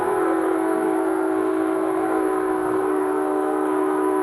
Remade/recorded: remade